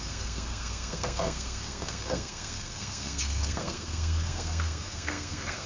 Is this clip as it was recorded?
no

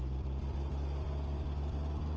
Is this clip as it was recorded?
yes